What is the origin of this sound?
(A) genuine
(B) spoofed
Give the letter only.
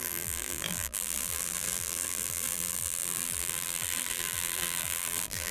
B